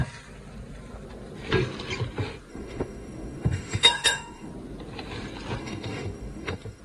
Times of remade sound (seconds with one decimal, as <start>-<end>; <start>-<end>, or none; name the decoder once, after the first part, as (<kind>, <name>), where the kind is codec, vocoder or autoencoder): 2.5-4.5 (autoencoder, DAC-VAE); 5.6-6.8